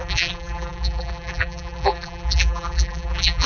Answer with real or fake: fake